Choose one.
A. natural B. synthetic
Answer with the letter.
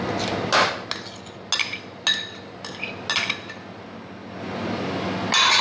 A